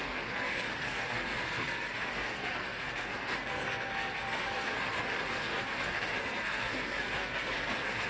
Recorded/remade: remade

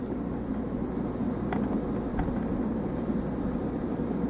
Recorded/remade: recorded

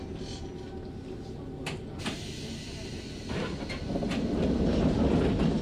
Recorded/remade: recorded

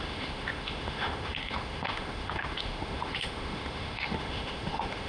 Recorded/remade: remade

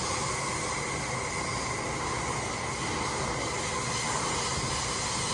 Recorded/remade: recorded